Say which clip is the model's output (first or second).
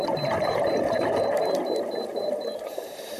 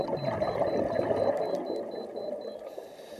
first